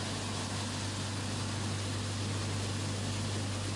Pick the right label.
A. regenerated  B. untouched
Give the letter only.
B